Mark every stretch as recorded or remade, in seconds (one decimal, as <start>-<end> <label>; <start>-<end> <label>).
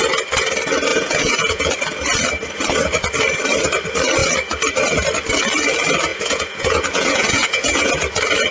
0.0-0.9 recorded; 0.9-1.7 remade; 1.7-6.1 recorded; 6.1-7.9 remade; 7.9-8.5 recorded